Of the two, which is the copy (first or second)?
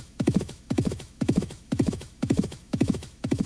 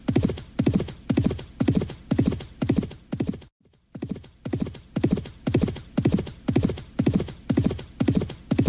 first